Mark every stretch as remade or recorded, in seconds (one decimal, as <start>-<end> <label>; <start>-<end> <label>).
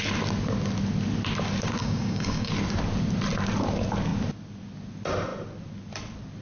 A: 0.0-1.8 recorded; 1.8-2.5 remade; 2.5-6.4 recorded